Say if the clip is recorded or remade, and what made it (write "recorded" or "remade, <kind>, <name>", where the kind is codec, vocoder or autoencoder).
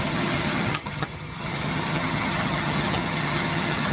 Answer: remade, vocoder, HiFi-GAN